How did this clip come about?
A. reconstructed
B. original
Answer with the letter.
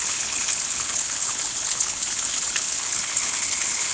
A